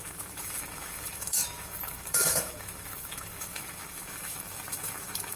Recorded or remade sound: remade